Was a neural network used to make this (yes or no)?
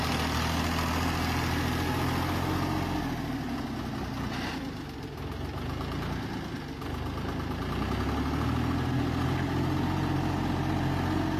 no